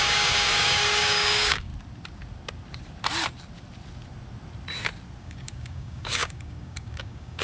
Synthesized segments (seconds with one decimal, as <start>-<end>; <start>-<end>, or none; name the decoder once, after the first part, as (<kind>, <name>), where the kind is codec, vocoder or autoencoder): 0.0-1.7 (codec, DAC); 5.2-7.4